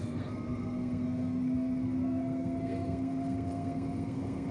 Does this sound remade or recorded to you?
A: remade